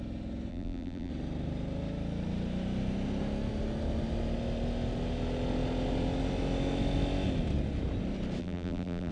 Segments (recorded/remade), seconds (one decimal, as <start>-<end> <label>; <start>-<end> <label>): 0.0-0.5 recorded; 0.5-1.1 remade; 1.1-8.4 recorded; 8.4-9.1 remade